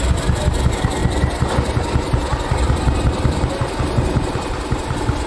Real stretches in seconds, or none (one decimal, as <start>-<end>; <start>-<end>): 0.0-5.3